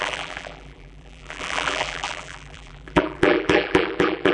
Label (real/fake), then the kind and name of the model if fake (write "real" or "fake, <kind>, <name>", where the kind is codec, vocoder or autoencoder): fake, vocoder, BigVGAN v2